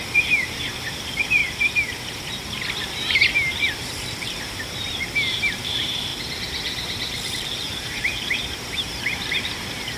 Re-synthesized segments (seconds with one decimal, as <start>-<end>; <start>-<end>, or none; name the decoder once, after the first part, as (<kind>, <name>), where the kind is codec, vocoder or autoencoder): 0.0-1.4 (vocoder, BigVGAN v2); 2.7-6.1; 7.3-10.0